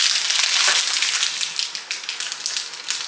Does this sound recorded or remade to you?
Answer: recorded